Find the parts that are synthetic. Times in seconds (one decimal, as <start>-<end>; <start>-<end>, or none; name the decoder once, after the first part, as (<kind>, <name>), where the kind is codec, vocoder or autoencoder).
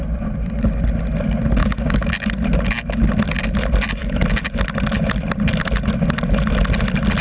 1.6-2.1 (codec, DAC)